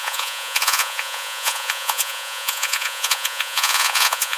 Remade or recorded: remade